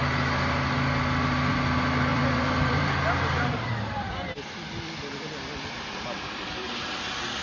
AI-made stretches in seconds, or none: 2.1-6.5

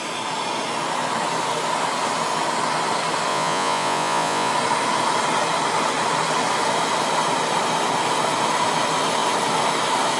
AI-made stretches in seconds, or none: 3.3-4.5

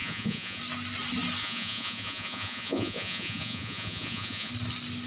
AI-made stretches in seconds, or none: 0.0-0.6; 1.4-4.5

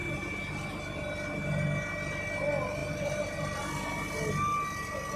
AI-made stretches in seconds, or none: none

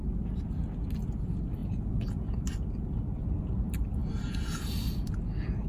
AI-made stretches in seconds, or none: 1.6-2.4

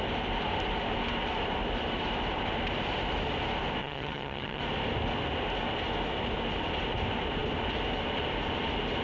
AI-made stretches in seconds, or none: 3.8-4.6

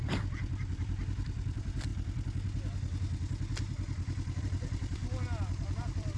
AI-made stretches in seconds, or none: 0.0-1.9; 4.4-5.0; 5.8-6.2

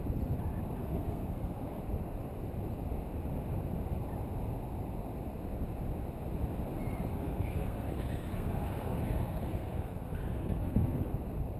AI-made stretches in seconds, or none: 0.8-1.8; 7.1-11.0